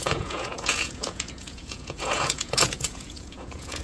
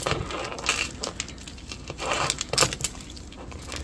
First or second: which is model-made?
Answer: first